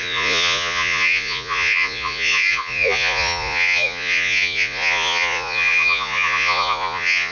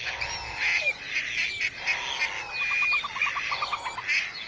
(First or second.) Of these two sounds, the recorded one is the second